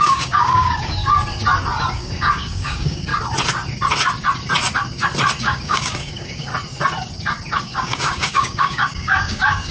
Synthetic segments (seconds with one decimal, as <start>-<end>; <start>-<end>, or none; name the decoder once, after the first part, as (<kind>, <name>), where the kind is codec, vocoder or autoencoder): 0.0-1.0 (codec, DAC); 1.9-3.1; 5.4-6.5; 7.6-9.7